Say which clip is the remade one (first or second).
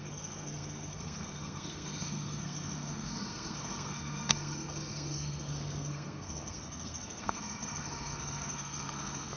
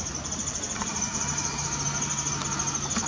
first